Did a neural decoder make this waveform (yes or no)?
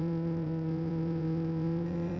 yes